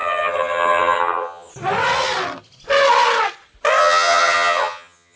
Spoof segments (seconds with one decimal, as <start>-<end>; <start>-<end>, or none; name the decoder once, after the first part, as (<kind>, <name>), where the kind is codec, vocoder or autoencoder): 0.0-1.5 (vocoder, HiFi-GAN); 3.8-5.2